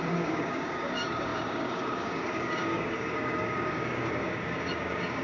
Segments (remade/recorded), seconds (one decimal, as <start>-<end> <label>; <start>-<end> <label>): 0.0-5.2 remade

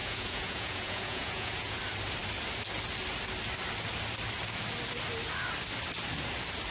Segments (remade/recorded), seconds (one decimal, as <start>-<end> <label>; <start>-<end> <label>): 0.0-1.8 remade; 1.8-6.7 recorded

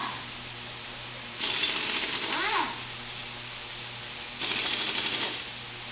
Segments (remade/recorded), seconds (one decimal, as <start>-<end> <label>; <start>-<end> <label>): 0.0-2.1 remade; 2.1-5.9 recorded